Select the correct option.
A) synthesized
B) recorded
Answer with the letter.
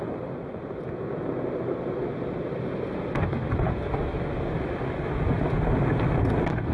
B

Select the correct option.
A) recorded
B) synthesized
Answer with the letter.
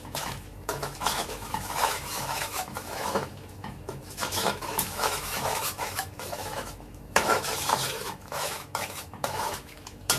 B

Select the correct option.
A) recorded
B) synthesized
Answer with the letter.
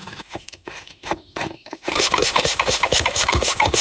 B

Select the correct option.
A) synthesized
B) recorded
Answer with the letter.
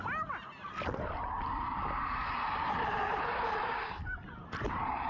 B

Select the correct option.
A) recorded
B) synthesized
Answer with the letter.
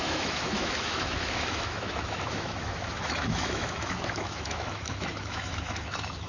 B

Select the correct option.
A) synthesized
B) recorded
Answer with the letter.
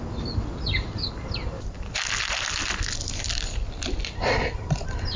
B